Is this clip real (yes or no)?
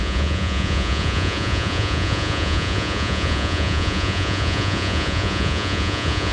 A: no